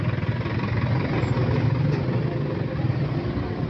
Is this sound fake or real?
real